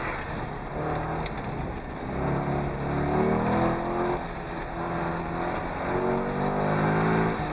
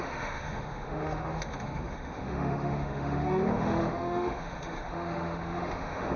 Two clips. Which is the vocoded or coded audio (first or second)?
second